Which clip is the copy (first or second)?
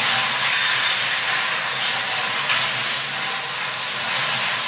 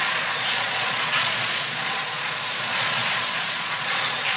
second